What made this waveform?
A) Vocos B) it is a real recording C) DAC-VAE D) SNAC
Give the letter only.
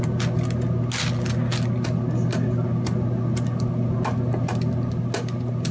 B